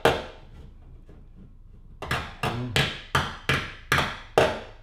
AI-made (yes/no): no